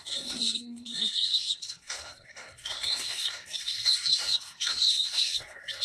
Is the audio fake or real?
fake